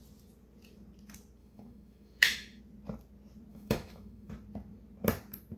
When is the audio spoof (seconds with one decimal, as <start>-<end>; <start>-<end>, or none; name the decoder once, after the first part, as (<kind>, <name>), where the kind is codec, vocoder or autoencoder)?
1.4-2.6 (autoencoder, DAC-VAE); 3.5-4.3